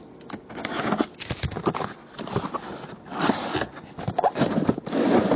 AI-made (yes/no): no